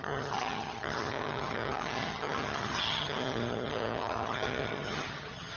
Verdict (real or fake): fake